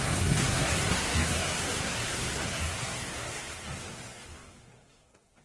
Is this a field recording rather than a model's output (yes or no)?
no